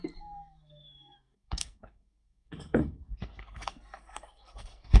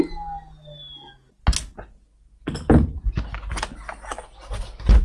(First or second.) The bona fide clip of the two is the second